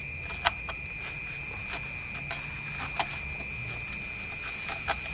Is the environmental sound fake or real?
real